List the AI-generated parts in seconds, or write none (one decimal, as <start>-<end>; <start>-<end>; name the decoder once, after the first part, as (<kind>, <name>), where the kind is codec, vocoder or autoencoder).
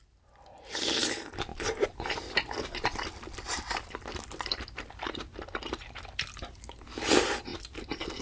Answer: 1.5-6.2 (vocoder, BigVGAN v2)